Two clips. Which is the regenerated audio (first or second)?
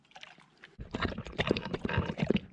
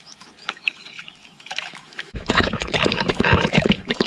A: second